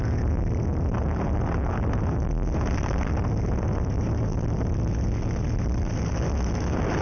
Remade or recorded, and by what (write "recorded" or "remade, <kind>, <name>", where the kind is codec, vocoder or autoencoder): remade, vocoder, BigVGAN v2